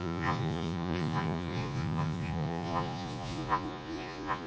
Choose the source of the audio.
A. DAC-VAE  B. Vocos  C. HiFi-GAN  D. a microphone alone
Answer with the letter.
B